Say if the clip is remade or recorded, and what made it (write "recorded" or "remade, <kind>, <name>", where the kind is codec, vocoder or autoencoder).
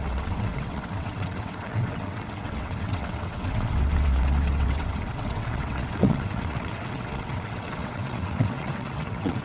remade, vocoder, WaveNeXt